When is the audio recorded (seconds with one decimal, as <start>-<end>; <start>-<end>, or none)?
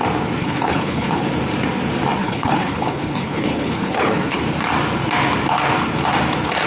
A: 0.0-0.4; 1.3-2.2; 4.4-6.7